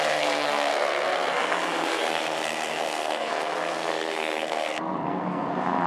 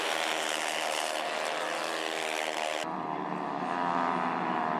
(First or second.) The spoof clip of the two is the first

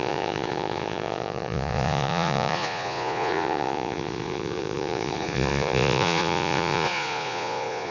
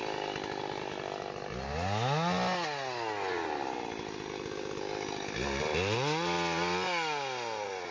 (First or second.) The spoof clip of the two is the first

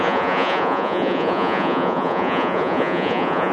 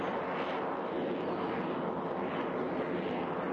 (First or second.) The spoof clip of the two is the first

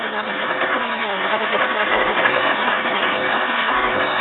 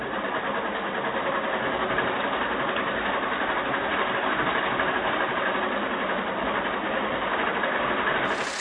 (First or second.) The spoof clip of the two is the first